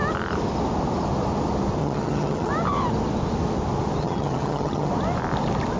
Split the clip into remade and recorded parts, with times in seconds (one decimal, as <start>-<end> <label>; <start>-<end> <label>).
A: 0.0-1.8 recorded; 1.8-2.5 remade; 2.5-4.0 recorded; 4.0-4.9 remade; 4.9-5.8 recorded